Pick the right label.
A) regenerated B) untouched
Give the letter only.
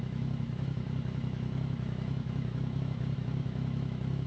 A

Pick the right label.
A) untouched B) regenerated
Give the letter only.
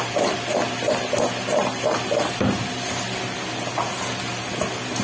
A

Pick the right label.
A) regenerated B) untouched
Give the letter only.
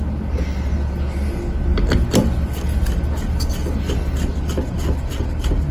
B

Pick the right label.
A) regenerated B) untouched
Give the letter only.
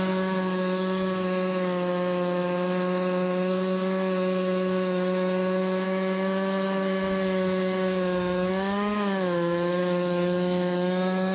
A